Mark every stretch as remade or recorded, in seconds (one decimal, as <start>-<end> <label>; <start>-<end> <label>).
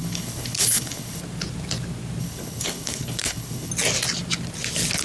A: 0.0-1.2 remade; 1.2-2.2 recorded; 2.2-3.7 remade; 3.7-5.0 recorded